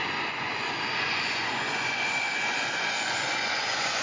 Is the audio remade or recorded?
remade